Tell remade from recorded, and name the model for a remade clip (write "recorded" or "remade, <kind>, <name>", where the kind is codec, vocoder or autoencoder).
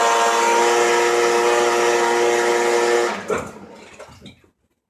recorded